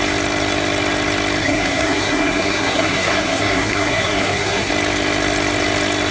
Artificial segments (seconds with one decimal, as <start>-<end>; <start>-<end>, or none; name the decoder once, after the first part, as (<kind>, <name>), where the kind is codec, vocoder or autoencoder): 1.4-4.7 (codec, SNAC)